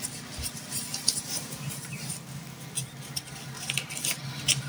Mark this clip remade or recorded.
recorded